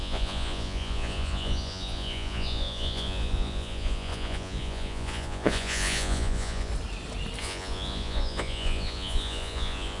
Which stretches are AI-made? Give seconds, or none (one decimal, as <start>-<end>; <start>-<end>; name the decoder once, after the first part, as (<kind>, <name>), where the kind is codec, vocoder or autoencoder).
0.0-6.7 (vocoder, Vocos); 7.4-10.0